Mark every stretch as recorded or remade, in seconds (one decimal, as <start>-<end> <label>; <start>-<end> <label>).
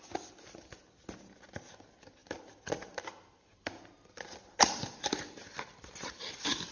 0.0-2.2 recorded; 2.2-5.3 remade; 5.3-6.7 recorded